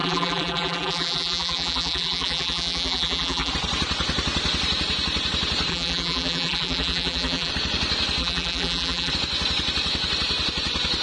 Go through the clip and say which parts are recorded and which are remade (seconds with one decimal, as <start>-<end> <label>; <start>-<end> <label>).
0.0-3.5 remade; 3.5-5.7 recorded; 5.7-7.5 remade; 7.5-8.2 recorded; 8.2-9.1 remade; 9.1-11.0 recorded